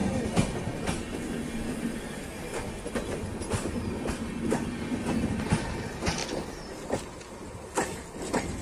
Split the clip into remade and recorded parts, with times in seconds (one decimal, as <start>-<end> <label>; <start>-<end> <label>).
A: 0.0-8.6 recorded